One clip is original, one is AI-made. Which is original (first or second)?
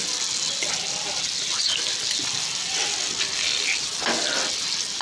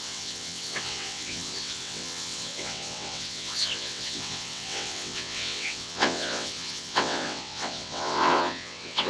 first